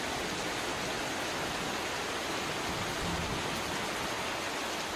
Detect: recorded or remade recorded